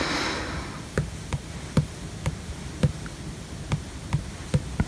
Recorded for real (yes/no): yes